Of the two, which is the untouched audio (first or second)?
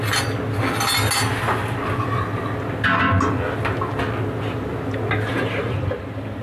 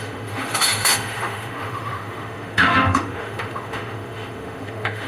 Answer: first